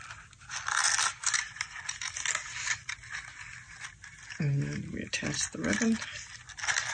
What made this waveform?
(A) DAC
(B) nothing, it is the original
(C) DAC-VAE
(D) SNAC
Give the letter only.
B